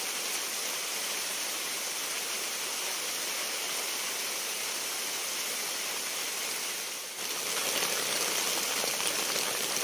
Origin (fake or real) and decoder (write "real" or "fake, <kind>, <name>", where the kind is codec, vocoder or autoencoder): real